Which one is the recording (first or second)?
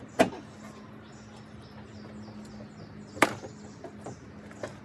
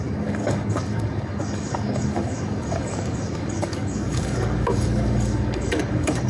first